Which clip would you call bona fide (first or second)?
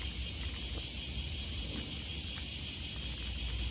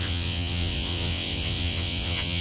first